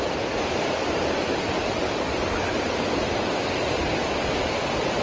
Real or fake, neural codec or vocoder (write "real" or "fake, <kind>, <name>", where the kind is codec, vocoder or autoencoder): real